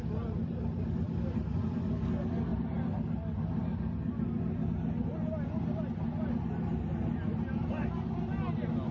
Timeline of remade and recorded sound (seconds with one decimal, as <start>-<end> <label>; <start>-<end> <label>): 0.0-8.9 recorded